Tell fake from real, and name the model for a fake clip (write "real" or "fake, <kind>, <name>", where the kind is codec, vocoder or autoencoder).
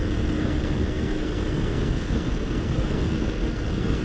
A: fake, codec, SNAC